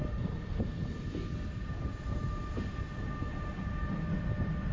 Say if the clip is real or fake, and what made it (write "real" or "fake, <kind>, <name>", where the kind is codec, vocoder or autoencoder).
real